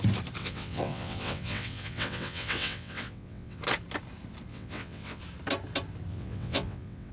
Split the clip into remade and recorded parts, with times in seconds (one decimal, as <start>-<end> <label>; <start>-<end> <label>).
0.0-0.4 recorded; 0.4-3.6 remade; 3.6-4.5 recorded; 4.5-5.2 remade; 5.2-6.1 recorded; 6.1-7.1 remade